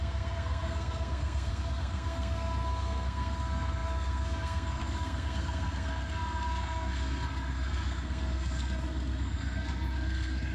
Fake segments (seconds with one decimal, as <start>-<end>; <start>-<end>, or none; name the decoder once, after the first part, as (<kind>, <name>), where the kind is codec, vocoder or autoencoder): 0.0-10.5 (codec, SNAC)